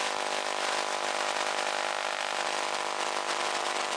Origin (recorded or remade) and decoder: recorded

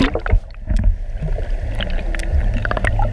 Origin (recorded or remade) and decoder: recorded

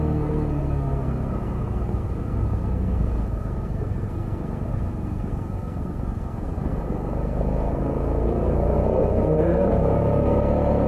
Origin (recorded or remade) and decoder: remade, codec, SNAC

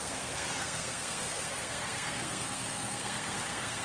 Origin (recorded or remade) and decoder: remade, codec, SNAC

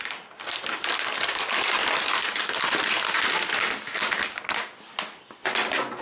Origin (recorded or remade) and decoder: recorded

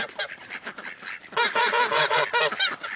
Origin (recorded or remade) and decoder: recorded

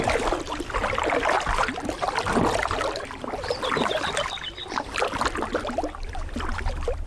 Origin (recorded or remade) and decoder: recorded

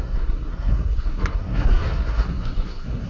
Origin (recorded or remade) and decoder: remade, codec, SNAC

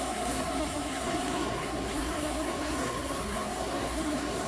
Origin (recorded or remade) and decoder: remade, codec, SNAC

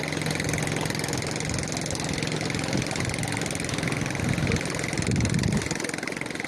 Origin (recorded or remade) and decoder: recorded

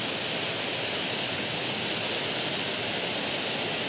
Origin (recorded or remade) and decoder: recorded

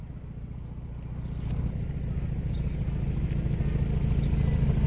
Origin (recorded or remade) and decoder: recorded